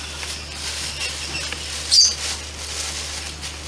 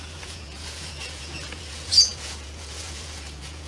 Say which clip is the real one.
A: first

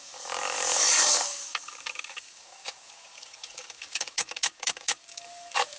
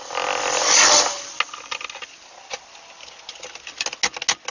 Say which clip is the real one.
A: second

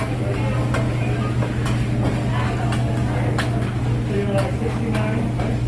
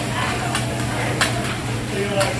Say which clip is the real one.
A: first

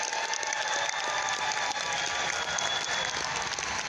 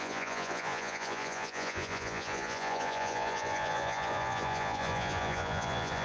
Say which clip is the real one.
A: first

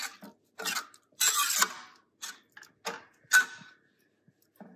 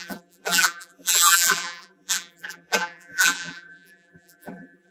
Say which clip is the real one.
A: first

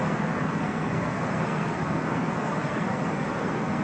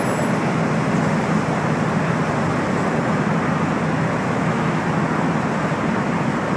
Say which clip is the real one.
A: second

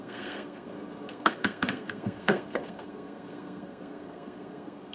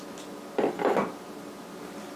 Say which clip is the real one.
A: second